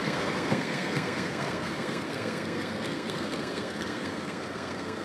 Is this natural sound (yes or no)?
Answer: no